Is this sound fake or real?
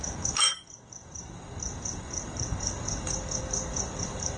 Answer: fake